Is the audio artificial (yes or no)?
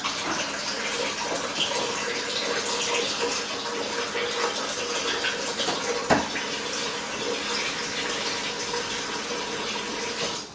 no